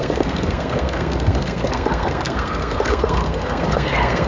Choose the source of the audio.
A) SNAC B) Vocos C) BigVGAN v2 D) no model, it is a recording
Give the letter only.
A